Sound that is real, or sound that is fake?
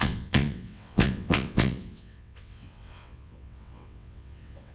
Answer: fake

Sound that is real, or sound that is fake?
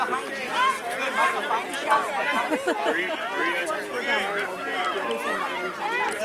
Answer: real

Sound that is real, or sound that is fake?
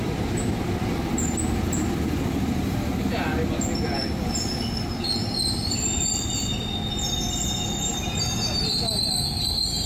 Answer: real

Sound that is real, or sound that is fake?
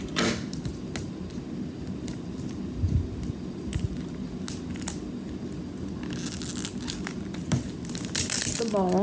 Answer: real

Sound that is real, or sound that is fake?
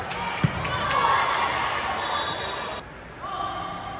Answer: real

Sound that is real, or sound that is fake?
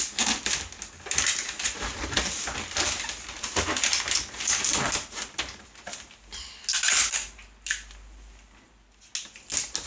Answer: real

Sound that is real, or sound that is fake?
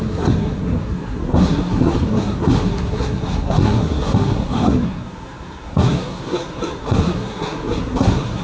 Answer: fake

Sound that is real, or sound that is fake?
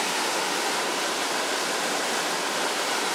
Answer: real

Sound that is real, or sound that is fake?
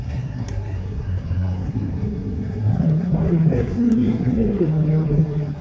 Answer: fake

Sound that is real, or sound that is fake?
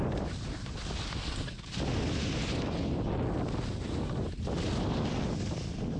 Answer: real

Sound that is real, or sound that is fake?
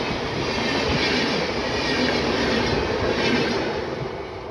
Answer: real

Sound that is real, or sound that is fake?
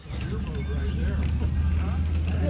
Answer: real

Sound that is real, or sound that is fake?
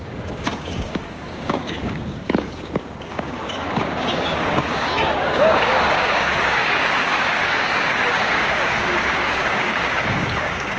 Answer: fake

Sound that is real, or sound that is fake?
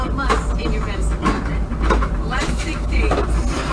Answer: real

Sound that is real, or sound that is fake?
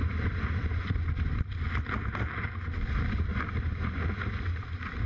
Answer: real